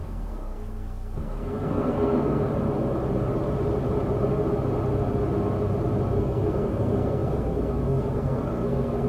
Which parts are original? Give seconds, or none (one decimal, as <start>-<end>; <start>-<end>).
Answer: 2.5-6.2